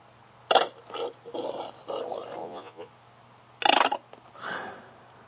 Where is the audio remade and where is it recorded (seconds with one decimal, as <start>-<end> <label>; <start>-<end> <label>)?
0.0-2.4 recorded; 2.4-2.9 remade; 2.9-5.3 recorded